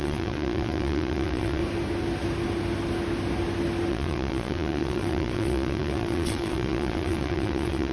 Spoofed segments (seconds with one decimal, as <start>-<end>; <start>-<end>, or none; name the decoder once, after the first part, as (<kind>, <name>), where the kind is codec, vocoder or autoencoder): 0.0-1.6 (vocoder, WaveNeXt); 3.9-7.9